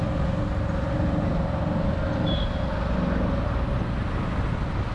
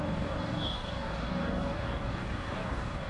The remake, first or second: second